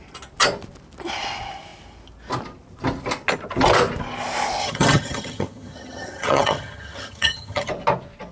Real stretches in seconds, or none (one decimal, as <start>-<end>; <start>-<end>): 0.0-4.6; 7.7-8.3